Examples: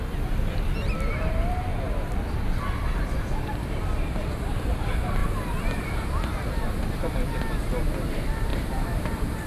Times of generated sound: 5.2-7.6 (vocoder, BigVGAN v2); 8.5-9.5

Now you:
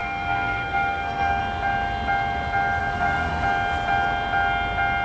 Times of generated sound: 0.0-1.4 (codec, SNAC); 2.8-3.3